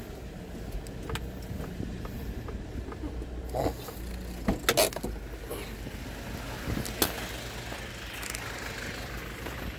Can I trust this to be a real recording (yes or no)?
yes